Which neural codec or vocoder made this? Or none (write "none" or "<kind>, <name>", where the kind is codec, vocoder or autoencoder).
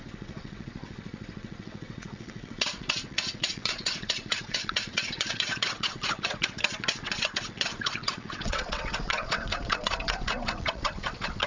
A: vocoder, WaveNeXt